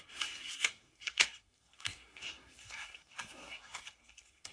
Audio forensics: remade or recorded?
remade